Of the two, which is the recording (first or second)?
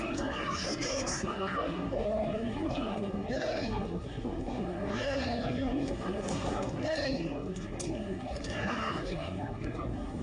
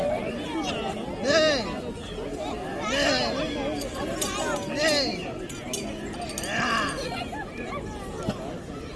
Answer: second